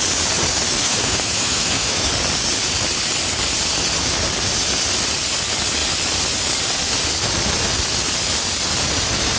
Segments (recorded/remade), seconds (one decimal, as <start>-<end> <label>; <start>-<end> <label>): 0.0-0.8 recorded; 0.8-2.1 remade; 2.1-9.4 recorded